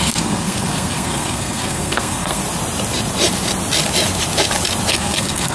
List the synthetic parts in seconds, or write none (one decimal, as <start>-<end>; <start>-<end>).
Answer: 0.0-2.4; 4.9-5.5